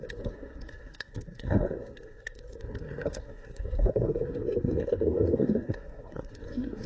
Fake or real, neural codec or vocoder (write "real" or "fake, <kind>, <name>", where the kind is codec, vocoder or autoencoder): fake, codec, SNAC